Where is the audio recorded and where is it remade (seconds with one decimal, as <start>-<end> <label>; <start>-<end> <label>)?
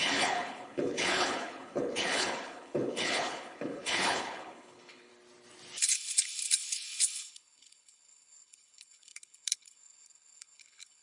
0.0-5.1 remade; 5.1-5.8 recorded; 5.8-11.0 remade